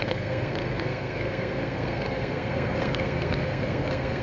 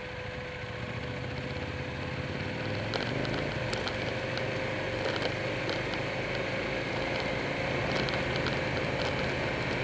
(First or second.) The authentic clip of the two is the second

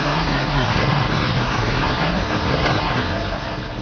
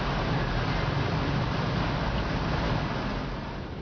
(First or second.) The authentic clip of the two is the second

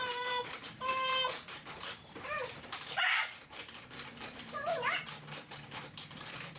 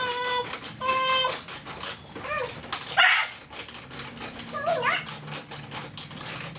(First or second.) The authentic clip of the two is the second